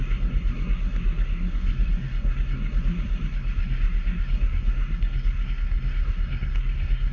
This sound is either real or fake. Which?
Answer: fake